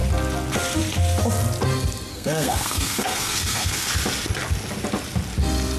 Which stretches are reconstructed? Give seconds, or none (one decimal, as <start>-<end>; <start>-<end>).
2.1-3.9